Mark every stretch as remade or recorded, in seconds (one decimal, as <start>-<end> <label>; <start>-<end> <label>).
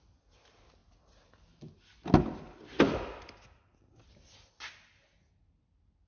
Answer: 0.0-6.1 recorded